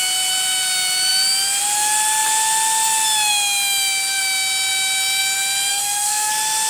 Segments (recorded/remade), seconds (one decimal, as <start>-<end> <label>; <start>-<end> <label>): 0.0-5.7 recorded; 5.7-6.3 remade; 6.3-6.7 recorded

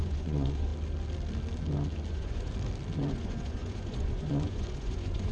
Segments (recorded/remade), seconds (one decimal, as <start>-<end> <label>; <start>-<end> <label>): 0.0-0.7 remade; 0.7-2.1 recorded; 2.1-2.5 remade; 2.5-3.1 recorded; 3.1-5.3 remade